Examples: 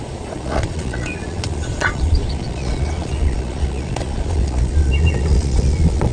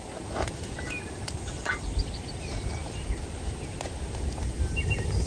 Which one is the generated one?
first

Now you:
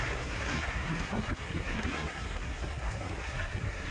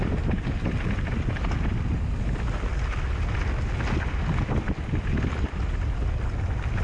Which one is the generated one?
first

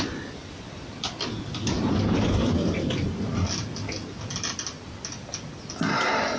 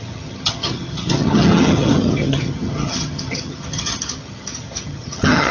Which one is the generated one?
second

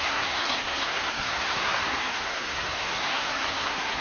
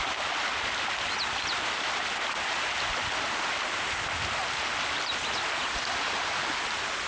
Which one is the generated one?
first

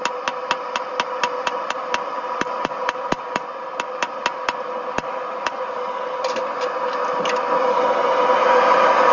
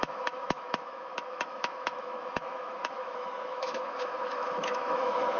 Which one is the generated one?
second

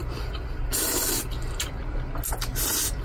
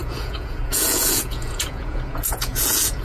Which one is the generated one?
second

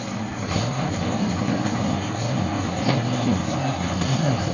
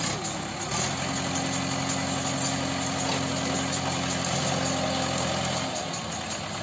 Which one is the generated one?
first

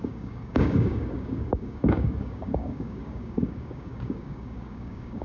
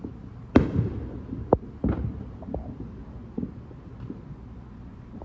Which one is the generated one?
first